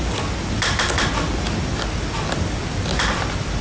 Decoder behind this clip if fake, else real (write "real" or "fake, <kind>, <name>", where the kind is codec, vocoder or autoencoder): real